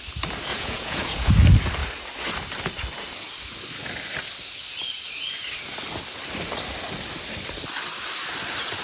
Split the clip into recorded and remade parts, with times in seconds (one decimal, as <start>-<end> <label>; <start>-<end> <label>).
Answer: 0.0-0.5 recorded; 0.5-1.3 remade; 1.3-8.8 recorded

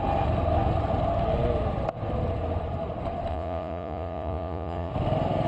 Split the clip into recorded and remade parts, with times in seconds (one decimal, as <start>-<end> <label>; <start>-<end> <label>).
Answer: 0.0-3.3 recorded; 3.3-4.9 remade; 4.9-5.5 recorded

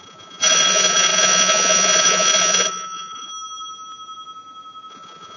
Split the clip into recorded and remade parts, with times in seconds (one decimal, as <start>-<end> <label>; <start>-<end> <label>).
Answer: 0.0-3.3 remade; 3.3-4.9 recorded; 4.9-5.4 remade

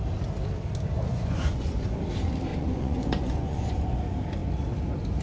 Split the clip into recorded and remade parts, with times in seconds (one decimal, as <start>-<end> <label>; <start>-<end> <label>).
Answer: 0.0-1.1 recorded; 1.1-2.0 remade; 2.0-2.5 recorded; 2.5-4.0 remade; 4.0-5.2 recorded

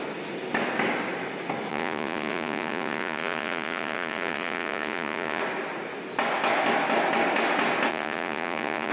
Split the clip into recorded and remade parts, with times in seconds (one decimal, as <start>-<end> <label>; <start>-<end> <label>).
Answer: 0.0-1.7 recorded; 1.7-5.4 remade; 5.4-7.9 recorded; 7.9-8.9 remade